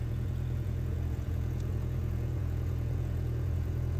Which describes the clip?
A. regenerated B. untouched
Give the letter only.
A